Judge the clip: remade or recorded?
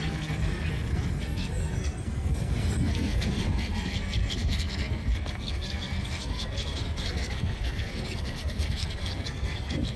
remade